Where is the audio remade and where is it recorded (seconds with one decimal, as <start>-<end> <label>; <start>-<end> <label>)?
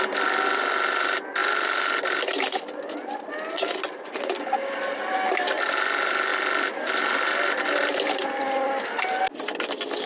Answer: 0.0-10.1 recorded